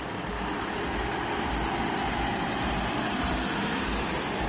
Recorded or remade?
recorded